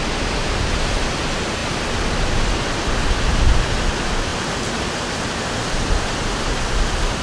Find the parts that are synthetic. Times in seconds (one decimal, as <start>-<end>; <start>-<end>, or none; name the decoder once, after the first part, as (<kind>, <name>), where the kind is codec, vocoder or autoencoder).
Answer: none